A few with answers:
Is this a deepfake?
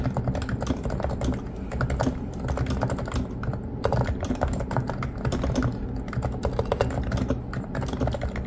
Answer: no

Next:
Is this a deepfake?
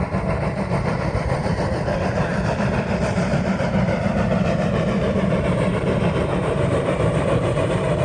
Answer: yes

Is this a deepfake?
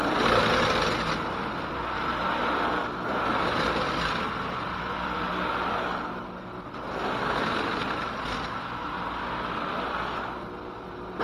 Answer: no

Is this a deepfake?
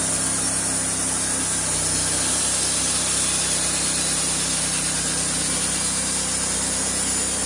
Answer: no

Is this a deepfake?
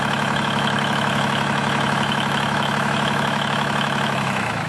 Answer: yes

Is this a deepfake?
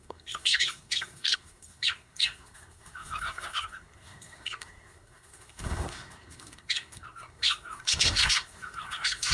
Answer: yes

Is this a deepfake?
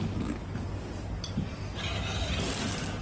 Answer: no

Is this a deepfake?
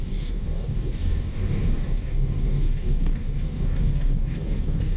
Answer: yes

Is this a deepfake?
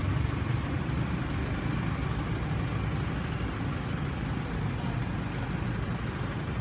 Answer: no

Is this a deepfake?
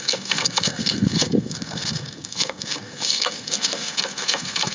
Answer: yes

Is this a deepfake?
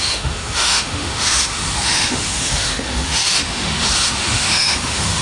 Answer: yes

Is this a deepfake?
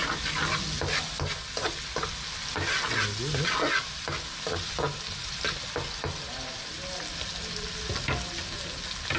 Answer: no